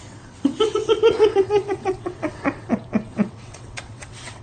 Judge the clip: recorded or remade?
remade